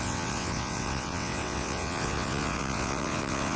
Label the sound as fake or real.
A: fake